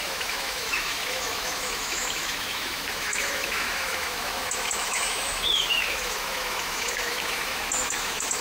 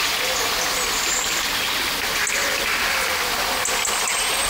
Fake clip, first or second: first